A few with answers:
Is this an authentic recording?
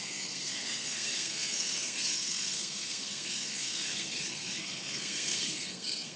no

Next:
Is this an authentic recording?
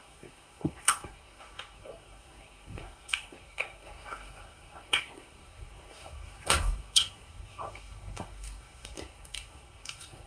no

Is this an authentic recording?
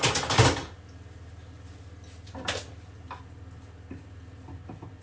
yes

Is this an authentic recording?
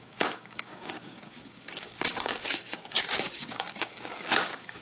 no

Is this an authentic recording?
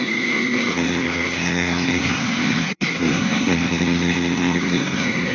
no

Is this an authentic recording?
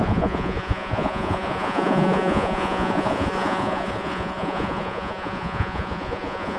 no